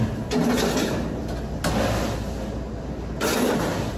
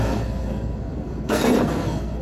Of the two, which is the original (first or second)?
first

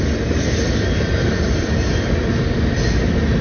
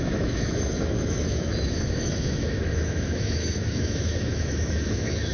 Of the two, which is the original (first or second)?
first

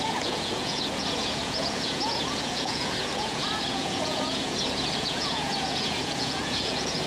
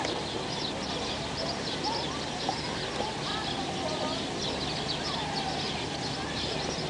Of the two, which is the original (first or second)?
second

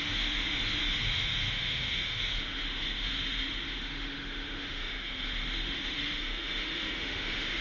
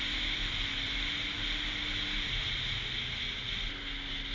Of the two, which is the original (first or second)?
second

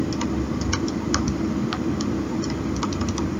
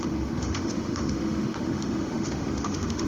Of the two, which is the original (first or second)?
first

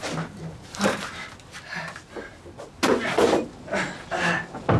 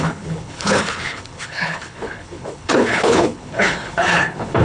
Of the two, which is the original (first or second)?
first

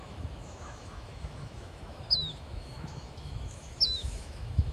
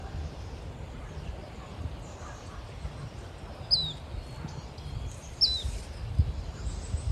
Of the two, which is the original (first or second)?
second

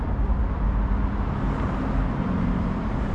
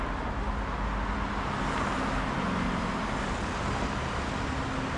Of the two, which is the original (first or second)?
second